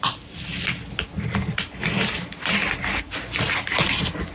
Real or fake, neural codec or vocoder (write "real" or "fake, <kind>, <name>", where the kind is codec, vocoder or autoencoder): real